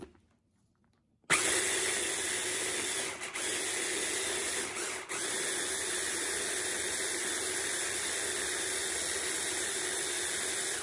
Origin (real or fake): real